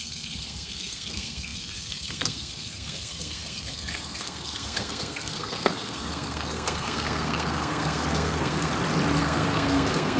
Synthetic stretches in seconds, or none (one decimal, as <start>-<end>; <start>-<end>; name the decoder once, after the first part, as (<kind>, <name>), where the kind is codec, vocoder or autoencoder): 0.0-8.7 (codec, SNAC); 9.2-10.2